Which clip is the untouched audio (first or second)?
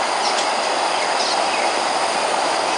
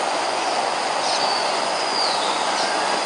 first